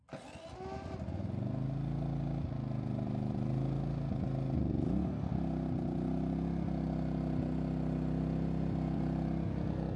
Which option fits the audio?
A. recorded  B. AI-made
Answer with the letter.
A